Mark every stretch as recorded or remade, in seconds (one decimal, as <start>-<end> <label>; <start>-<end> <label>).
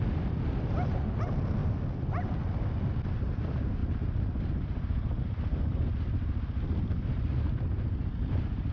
0.0-8.7 recorded